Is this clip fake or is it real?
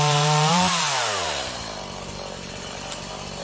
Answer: fake